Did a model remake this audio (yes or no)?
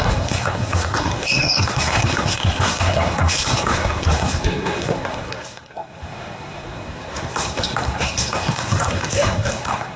yes